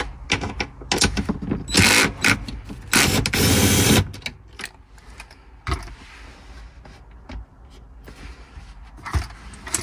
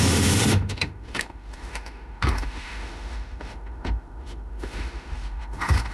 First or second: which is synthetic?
second